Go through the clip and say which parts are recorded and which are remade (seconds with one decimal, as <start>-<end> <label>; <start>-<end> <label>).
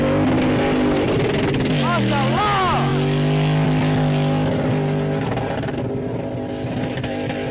0.0-7.5 recorded